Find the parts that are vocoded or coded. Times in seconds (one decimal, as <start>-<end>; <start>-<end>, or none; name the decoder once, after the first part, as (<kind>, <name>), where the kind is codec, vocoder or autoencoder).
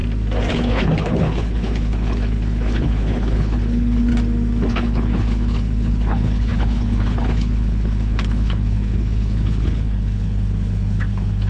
0.5-4.1 (codec, HILCodec); 4.7-11.5